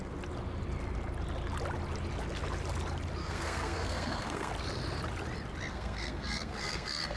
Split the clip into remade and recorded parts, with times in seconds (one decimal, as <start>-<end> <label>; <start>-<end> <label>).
0.0-3.2 recorded; 3.2-4.5 remade; 4.5-5.7 recorded; 5.7-7.2 remade